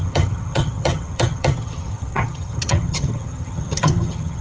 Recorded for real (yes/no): no